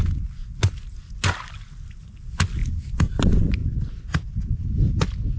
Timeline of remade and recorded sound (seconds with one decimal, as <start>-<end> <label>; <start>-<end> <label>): 0.0-5.4 recorded